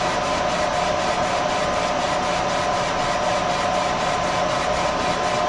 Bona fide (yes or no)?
yes